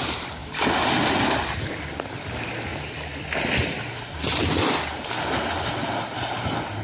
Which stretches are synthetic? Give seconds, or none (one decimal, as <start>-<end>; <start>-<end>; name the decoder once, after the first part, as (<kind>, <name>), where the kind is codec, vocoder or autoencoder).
none